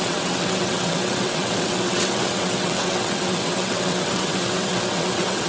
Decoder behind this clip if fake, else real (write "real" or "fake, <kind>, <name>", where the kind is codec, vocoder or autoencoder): fake, vocoder, WaveNeXt